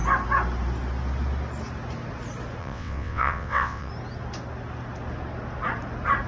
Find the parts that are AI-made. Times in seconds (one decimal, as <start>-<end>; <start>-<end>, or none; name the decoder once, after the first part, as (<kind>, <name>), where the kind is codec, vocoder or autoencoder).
2.6-3.9 (vocoder, WaveNeXt)